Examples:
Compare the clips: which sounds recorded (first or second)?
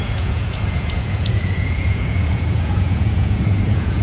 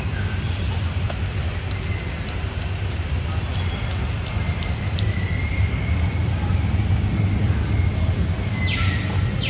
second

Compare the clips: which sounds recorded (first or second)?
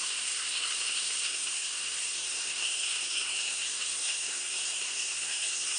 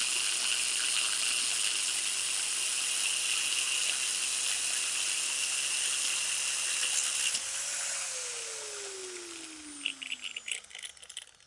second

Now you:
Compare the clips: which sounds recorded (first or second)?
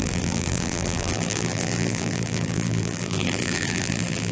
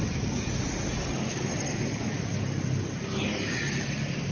second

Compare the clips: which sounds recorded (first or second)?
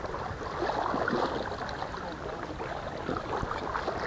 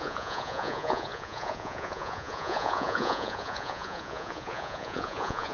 first